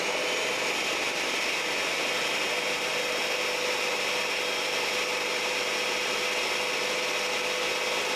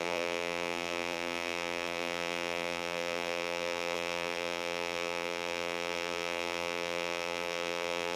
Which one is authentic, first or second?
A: first